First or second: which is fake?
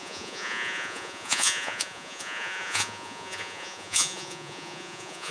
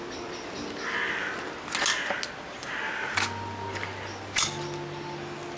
first